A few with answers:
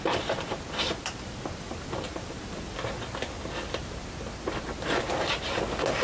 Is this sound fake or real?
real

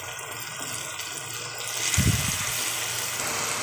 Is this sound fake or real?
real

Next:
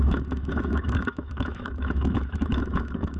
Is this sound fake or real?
fake